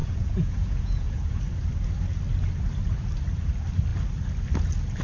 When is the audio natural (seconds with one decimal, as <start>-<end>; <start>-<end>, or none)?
1.4-5.0